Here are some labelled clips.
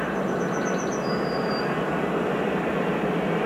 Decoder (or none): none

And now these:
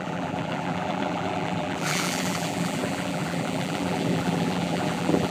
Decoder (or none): vocoder, BigVGAN v2